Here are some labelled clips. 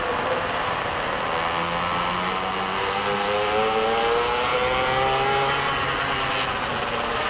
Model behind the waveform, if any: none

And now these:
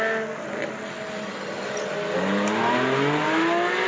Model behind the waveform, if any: none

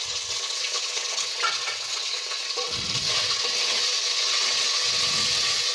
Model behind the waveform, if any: vocoder, WaveNeXt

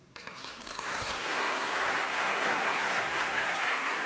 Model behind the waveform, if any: codec, SNAC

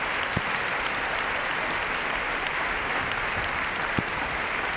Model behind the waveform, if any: none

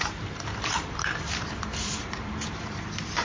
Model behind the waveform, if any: vocoder, BigVGAN v2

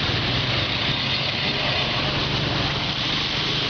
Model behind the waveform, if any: none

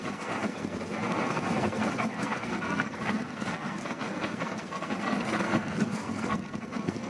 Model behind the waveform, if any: codec, SNAC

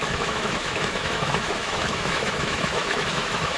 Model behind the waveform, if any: autoencoder, DAC-VAE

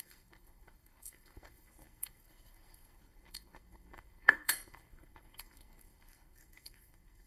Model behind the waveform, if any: codec, SNAC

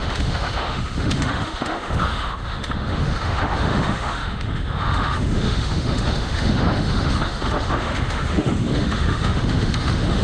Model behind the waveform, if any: autoencoder, DAC-VAE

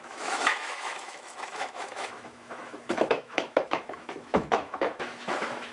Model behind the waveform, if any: autoencoder, DAC-VAE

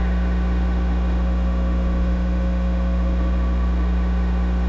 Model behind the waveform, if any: autoencoder, DAC-VAE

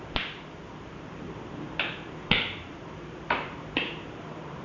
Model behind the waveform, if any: vocoder, BigVGAN v2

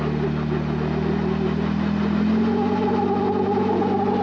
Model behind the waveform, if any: none